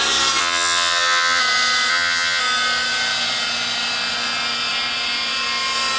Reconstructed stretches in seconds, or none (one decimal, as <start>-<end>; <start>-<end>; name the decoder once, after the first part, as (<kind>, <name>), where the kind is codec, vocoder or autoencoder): 0.4-1.4 (vocoder, HiFi-GAN); 1.9-2.4